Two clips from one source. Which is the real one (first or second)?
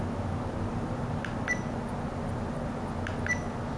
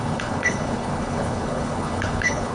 first